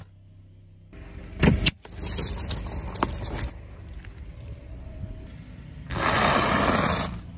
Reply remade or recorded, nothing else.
recorded